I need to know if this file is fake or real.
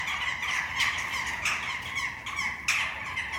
real